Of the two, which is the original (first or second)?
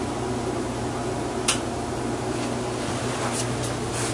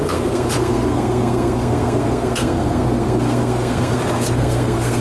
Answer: first